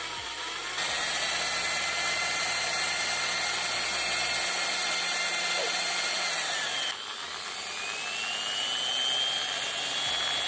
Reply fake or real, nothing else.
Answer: real